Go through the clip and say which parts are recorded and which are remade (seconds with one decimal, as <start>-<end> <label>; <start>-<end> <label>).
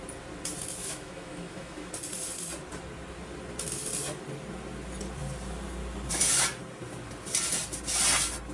0.0-0.8 recorded; 0.8-1.9 remade; 1.9-8.5 recorded